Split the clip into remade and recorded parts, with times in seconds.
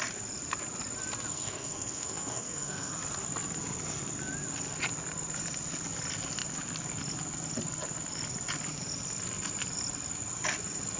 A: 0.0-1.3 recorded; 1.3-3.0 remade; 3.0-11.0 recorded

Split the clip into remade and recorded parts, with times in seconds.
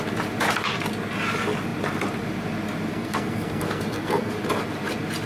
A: 0.0-2.9 recorded; 2.9-4.3 remade; 4.3-5.3 recorded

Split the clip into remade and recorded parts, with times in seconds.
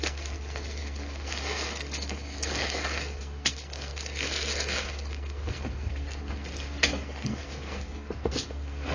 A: 0.0-8.9 remade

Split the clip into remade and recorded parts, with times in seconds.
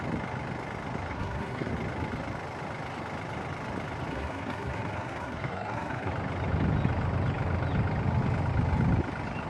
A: 0.0-1.1 recorded; 1.1-1.7 remade; 1.7-4.1 recorded; 4.1-6.1 remade; 6.1-9.5 recorded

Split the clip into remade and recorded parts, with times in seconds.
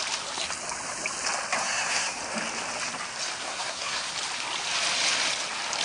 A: 0.0-1.6 recorded; 1.6-2.2 remade; 2.2-3.4 recorded; 3.4-4.1 remade; 4.1-5.8 recorded